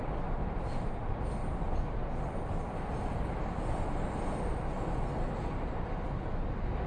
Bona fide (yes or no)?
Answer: yes